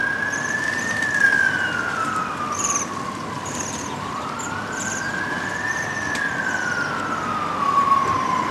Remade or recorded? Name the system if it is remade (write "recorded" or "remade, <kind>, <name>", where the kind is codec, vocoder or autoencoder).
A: recorded